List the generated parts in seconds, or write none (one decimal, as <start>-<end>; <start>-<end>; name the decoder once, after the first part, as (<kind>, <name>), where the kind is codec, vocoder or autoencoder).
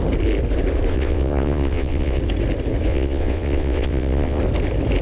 0.9-2.2 (vocoder, WaveNeXt); 2.9-4.4